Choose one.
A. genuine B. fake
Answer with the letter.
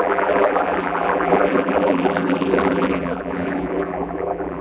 B